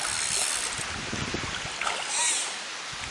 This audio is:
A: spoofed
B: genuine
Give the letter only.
B